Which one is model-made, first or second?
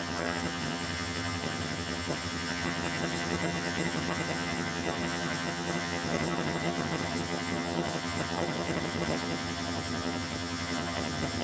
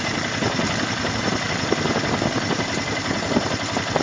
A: first